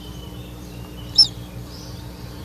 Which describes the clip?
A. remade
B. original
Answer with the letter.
A